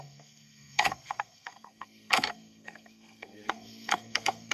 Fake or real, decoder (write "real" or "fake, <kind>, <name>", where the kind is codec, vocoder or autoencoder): fake, codec, SNAC